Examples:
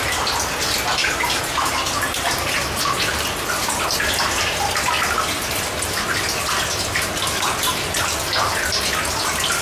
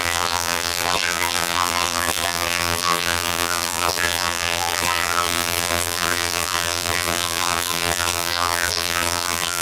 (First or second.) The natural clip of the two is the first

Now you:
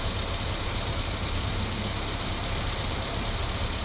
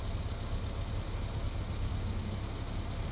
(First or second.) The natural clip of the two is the second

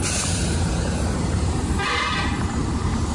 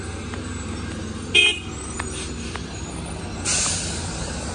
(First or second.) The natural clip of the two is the second